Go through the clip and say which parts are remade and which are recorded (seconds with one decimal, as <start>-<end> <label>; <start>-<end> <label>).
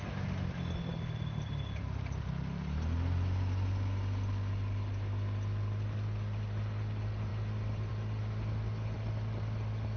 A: 0.0-10.0 recorded